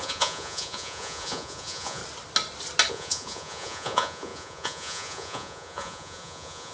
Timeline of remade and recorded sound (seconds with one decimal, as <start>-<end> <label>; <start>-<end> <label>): 0.0-2.0 remade; 2.0-2.9 recorded; 2.9-6.7 remade